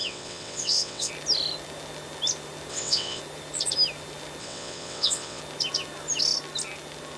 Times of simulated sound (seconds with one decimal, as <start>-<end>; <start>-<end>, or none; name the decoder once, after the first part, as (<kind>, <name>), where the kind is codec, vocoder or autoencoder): 0.0-1.1 (vocoder, WaveNeXt); 2.7-3.2; 4.4-5.4